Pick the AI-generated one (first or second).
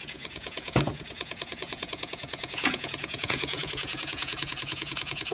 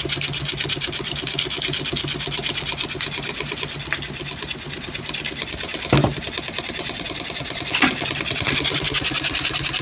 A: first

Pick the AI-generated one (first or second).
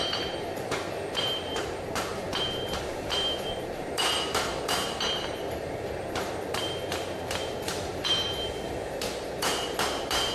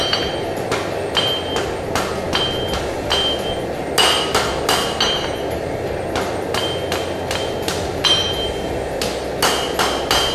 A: first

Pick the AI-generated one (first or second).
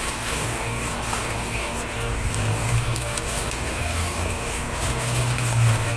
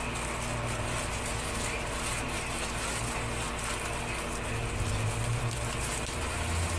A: first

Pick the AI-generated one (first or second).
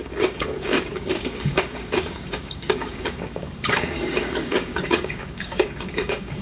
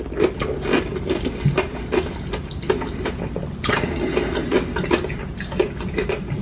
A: first